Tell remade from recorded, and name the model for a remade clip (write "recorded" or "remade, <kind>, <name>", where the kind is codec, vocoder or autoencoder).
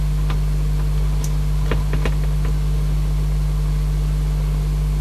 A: recorded